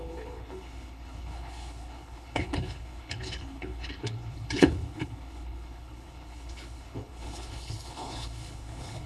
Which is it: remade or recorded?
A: remade